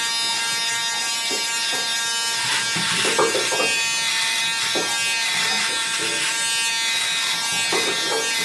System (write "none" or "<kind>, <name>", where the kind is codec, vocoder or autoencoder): none